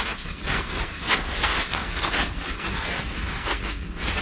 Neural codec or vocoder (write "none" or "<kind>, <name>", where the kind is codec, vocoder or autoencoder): codec, SNAC